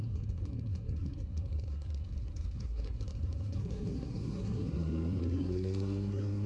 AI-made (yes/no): yes